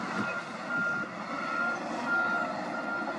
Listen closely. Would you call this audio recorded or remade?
recorded